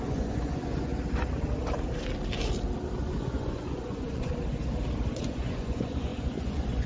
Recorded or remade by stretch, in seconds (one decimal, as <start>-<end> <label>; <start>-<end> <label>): 0.0-0.9 remade; 0.9-3.0 recorded; 3.0-4.3 remade; 4.3-5.1 recorded; 5.1-6.9 remade

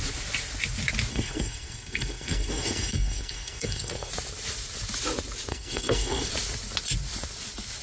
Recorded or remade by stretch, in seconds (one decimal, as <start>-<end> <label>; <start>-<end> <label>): 0.0-1.1 recorded; 1.1-4.1 remade; 4.1-5.5 recorded; 5.5-6.3 remade; 6.3-7.8 recorded